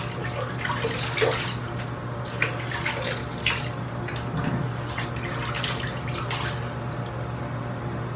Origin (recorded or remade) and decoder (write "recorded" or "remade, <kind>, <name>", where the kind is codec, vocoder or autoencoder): recorded